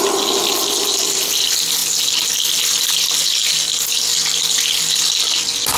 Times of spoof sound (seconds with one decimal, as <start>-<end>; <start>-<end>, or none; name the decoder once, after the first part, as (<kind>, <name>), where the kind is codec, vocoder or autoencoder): none